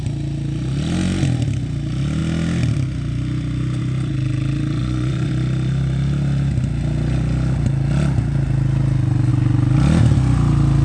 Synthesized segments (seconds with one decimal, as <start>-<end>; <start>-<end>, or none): 4.8-5.3